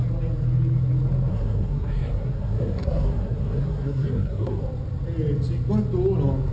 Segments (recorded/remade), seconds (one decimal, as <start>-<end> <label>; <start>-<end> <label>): 0.0-1.3 recorded; 1.3-4.6 remade; 4.6-6.5 recorded